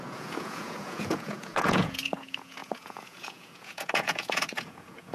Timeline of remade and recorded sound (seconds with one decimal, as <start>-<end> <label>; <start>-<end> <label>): 0.0-5.1 remade